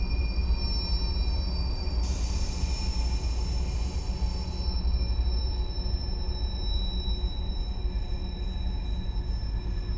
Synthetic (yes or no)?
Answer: no